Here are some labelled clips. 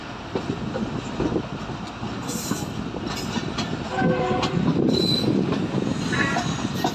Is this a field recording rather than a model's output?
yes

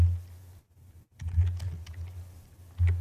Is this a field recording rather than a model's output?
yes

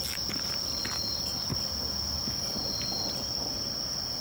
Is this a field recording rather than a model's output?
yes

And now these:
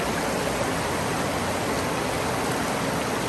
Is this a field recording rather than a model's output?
yes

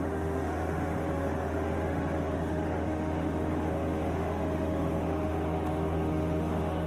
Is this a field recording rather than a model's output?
no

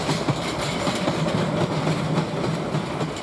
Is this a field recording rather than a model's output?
yes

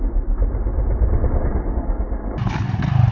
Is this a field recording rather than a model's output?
yes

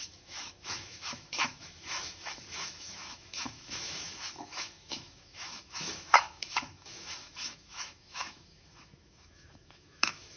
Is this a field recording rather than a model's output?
no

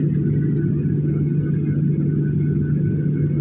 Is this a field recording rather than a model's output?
yes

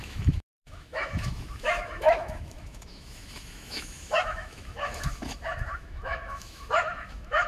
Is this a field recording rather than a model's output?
no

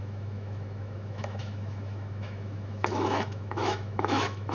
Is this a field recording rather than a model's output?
no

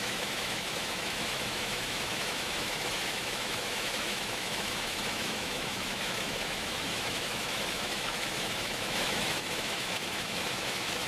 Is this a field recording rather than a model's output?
no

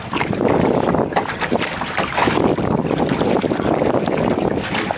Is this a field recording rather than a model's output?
yes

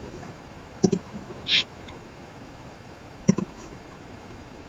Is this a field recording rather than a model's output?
no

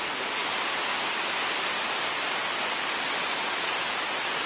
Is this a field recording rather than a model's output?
yes